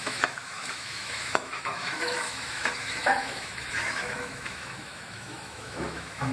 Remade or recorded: remade